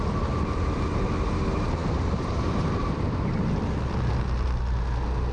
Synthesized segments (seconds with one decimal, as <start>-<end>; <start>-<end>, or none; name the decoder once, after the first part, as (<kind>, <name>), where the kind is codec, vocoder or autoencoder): 1.8-2.8 (vocoder, BigVGAN v2)